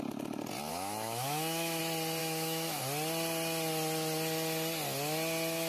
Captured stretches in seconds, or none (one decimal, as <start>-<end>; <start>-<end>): 0.0-0.7; 1.8-2.2; 2.8-5.7